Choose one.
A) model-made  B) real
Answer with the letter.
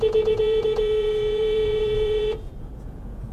A